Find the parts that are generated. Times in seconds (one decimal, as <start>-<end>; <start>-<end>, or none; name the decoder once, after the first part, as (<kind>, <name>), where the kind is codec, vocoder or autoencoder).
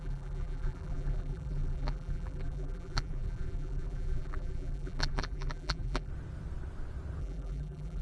0.0-6.1 (vocoder, BigVGAN v2); 7.2-8.0